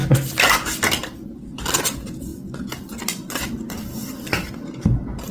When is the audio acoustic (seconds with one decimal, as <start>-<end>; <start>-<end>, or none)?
0.0-1.0; 2.3-5.3

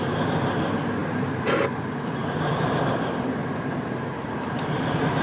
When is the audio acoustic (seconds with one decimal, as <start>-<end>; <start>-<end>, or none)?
0.0-1.0; 2.2-3.4

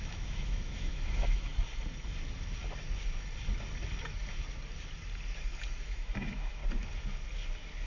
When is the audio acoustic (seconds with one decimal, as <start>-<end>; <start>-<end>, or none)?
1.5-5.8; 6.6-7.9

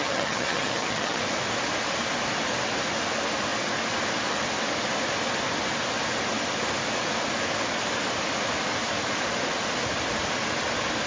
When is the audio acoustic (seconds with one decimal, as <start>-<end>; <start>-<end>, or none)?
1.2-11.1

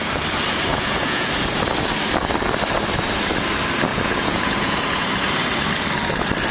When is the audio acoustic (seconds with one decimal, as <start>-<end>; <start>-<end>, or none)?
0.0-0.7; 1.3-3.9; 5.1-6.5

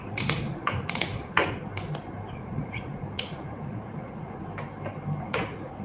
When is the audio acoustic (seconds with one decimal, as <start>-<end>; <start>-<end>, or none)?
1.7-2.3; 4.4-5.2

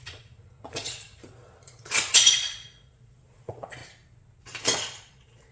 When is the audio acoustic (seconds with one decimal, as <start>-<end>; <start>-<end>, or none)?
3.8-4.6